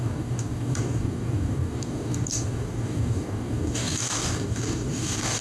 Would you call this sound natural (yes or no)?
no